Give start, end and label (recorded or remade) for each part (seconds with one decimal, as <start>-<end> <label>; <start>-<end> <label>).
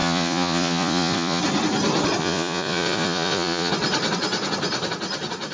0.0-1.4 remade; 1.4-2.2 recorded; 2.2-3.7 remade; 3.7-5.5 recorded